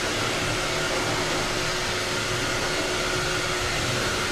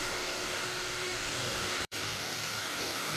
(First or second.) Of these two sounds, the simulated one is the second